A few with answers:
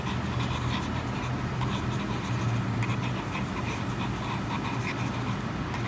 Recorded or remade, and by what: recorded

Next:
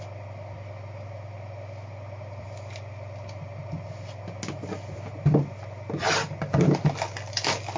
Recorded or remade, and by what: recorded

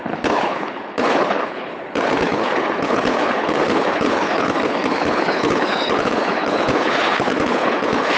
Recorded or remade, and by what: remade, codec, HILCodec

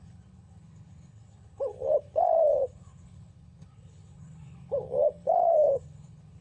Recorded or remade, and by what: remade, codec, HILCodec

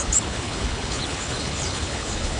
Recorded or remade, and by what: remade, codec, HILCodec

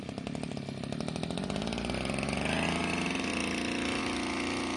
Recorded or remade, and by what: recorded